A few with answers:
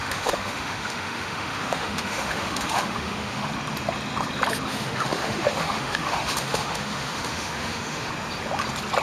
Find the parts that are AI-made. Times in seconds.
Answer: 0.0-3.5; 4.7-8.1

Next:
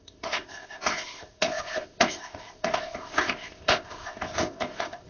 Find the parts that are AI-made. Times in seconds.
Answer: 0.0-5.1

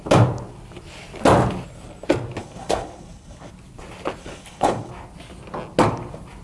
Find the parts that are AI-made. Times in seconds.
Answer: 2.4-3.5; 4.2-4.9

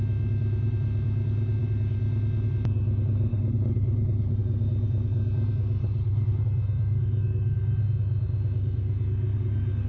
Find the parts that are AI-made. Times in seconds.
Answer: 3.3-4.3; 5.8-6.4

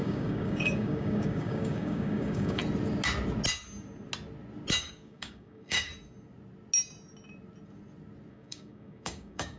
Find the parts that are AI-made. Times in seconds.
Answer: 0.0-2.6; 4.8-5.9; 8.3-9.6

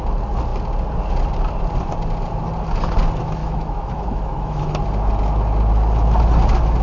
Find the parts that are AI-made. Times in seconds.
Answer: 3.4-4.8

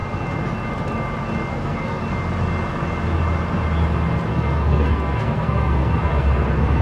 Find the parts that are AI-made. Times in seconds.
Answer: 1.5-2.0; 4.3-6.8